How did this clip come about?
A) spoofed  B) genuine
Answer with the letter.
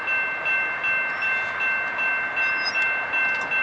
B